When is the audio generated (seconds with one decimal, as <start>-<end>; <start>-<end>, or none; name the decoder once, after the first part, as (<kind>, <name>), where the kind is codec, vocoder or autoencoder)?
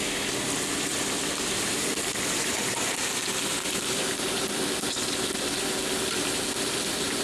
none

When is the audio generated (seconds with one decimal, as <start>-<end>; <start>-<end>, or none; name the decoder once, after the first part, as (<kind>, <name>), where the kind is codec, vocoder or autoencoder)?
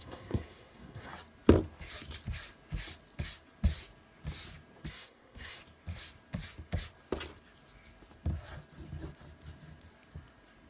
0.0-1.1 (codec, SNAC); 4.9-5.6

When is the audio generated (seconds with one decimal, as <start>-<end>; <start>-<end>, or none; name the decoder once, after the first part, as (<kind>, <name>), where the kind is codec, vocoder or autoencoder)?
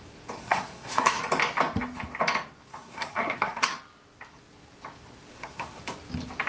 0.4-1.2 (codec, SNAC); 2.7-3.7; 5.3-5.8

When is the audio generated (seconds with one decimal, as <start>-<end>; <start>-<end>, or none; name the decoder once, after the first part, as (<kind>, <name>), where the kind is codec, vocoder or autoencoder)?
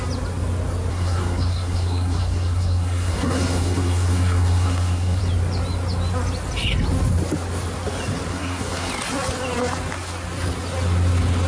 0.9-5.2 (codec, SNAC); 8.3-8.9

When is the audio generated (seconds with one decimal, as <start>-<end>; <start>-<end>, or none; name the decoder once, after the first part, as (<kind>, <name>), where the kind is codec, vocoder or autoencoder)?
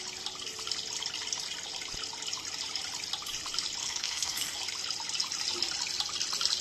3.8-4.6 (codec, SNAC)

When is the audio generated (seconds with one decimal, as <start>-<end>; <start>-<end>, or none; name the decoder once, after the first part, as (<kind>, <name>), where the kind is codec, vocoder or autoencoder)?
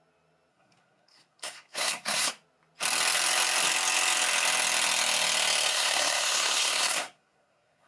0.5-2.3 (codec, SNAC); 5.7-7.9